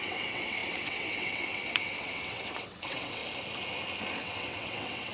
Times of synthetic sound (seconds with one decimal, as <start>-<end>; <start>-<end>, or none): 0.0-3.2; 4.2-5.1